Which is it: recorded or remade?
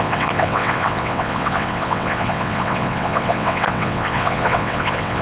remade